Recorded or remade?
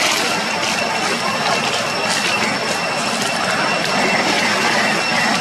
recorded